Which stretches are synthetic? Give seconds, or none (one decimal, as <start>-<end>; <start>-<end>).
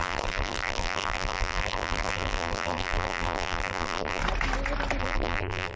0.0-4.2; 5.0-5.8